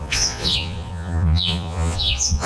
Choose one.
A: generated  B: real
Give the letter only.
A